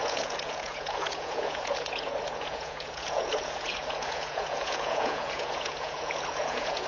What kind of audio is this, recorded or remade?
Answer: remade